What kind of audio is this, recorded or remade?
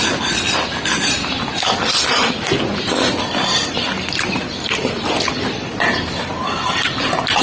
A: recorded